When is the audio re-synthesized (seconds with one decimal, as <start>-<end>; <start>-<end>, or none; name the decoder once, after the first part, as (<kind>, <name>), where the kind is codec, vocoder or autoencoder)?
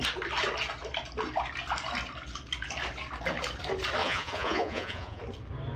4.0-5.2 (vocoder, Vocos)